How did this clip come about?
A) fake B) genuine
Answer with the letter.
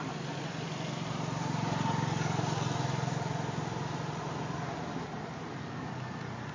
B